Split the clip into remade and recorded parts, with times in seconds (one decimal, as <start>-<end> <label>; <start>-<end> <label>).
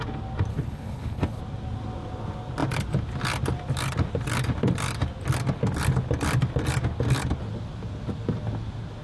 0.0-0.5 recorded; 0.5-1.4 remade; 1.4-9.0 recorded